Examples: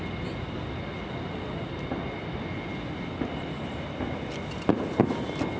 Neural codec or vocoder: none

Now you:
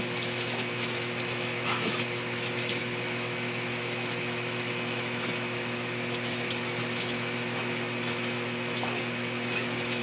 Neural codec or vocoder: autoencoder, DAC-VAE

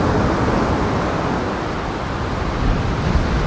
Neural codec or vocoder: none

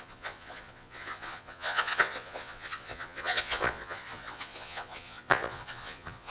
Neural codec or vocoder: vocoder, Vocos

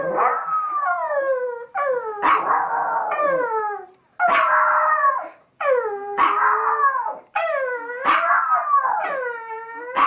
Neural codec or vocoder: none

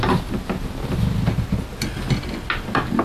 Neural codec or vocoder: none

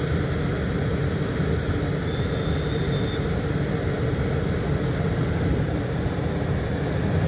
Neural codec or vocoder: none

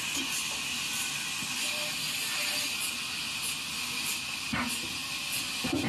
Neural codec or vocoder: none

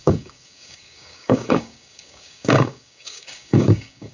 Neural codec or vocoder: codec, DAC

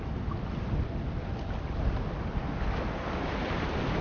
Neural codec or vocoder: none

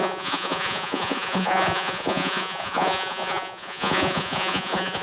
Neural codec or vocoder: vocoder, Vocos